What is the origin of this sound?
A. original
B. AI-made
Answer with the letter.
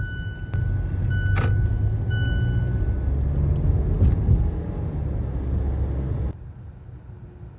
A